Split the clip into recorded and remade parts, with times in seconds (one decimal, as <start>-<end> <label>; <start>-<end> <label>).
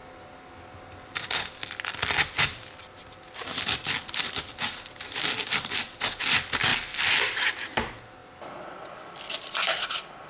0.0-10.3 recorded